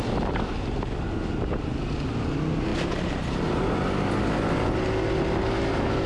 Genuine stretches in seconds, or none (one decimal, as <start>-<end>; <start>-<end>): 0.0-6.1